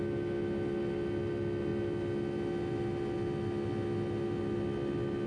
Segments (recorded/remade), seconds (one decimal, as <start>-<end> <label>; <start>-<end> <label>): 0.0-5.3 recorded